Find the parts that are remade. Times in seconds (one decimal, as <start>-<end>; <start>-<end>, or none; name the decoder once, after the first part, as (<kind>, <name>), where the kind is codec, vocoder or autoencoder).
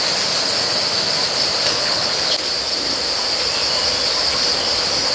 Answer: 1.7-2.4 (codec, HILCodec)